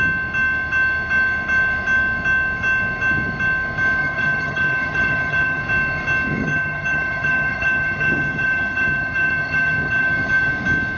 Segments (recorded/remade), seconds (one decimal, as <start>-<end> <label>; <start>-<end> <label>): 0.0-4.0 recorded; 4.0-5.6 remade; 5.6-6.4 recorded; 6.4-10.5 remade; 10.5-11.0 recorded